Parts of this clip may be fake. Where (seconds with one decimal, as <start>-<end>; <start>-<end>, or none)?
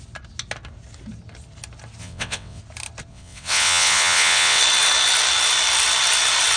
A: 2.0-2.6; 3.1-4.6